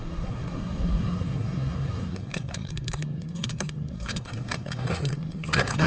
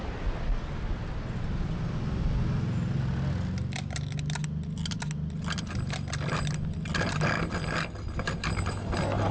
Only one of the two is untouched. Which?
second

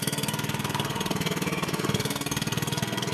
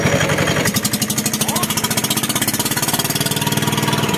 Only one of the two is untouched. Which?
second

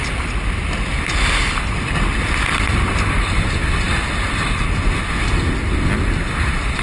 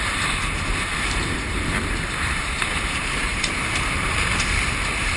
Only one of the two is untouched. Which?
first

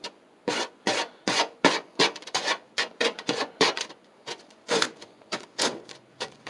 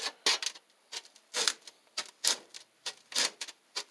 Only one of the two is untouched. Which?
second